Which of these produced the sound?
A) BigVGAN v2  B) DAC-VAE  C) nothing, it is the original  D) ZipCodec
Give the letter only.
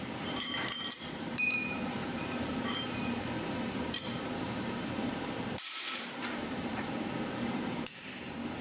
A